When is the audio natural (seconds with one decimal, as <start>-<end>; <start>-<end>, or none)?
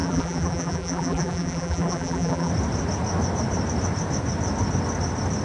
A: 2.5-5.4